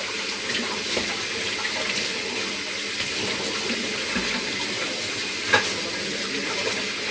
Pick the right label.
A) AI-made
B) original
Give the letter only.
B